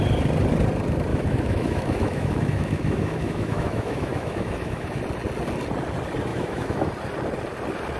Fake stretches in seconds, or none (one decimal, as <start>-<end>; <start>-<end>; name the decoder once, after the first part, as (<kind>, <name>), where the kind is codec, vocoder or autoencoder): 1.1-5.0 (autoencoder, DAC-VAE); 6.3-6.9